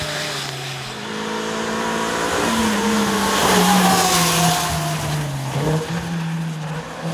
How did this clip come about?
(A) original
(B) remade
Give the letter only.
A